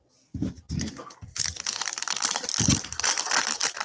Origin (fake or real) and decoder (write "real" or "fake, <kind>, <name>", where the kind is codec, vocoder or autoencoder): fake, vocoder, BigVGAN v2